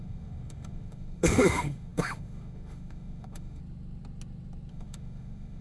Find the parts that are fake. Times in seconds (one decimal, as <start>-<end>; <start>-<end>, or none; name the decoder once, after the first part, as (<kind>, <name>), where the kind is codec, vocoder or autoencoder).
0.0-3.6 (autoencoder, DAC-VAE); 4.7-5.6